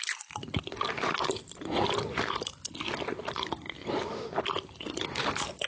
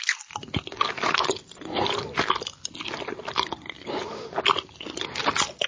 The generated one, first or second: first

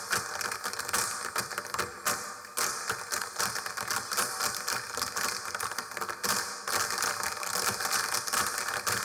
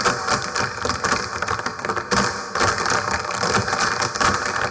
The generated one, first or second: second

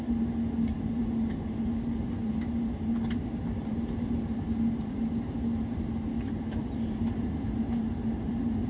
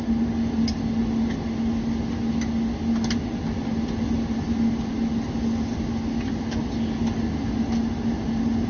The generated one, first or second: first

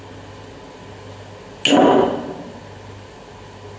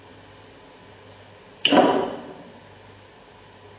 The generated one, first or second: second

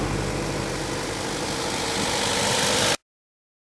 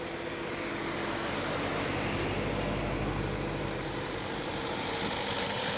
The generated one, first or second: second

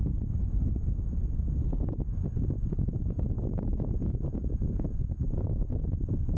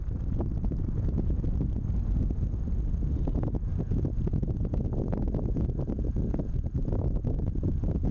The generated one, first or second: first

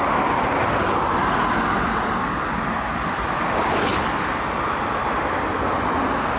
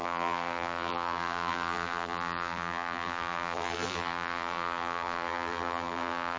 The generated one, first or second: second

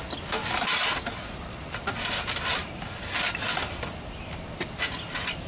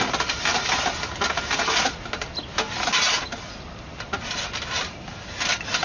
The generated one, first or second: first